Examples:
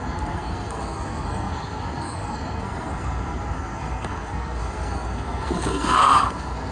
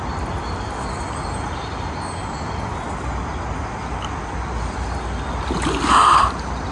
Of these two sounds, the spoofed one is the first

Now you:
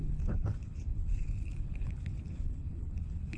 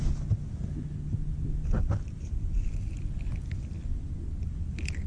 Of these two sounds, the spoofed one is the first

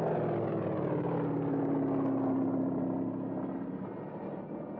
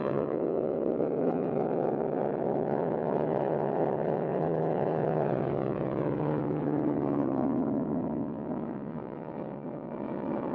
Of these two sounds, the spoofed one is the second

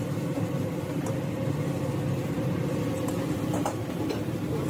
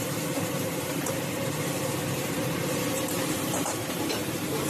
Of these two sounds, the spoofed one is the second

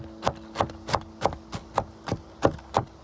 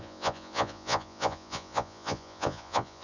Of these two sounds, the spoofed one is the second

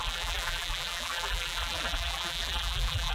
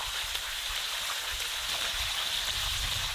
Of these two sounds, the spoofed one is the first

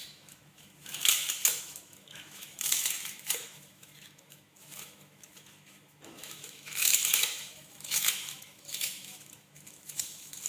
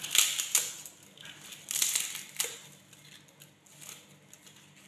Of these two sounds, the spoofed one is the first